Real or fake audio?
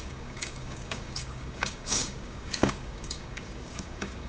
fake